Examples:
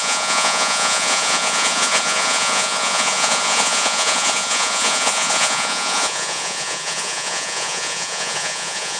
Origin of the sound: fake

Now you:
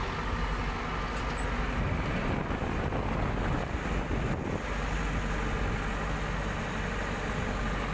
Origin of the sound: real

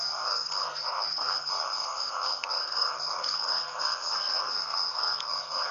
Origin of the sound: fake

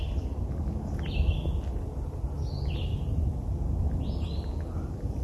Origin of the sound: real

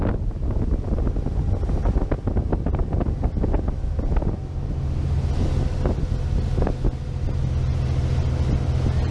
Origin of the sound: real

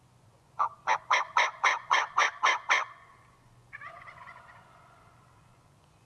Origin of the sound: fake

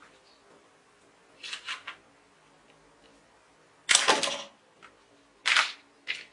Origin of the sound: real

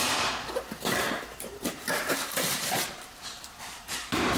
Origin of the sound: fake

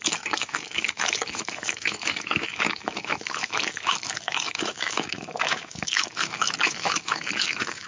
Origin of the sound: fake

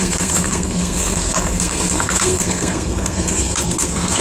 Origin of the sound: fake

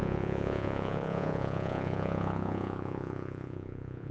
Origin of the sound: fake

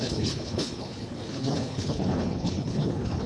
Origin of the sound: fake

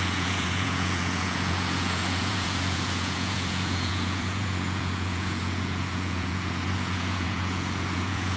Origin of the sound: fake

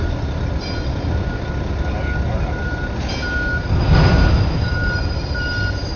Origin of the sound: real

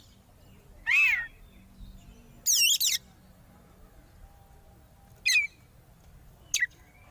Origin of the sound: real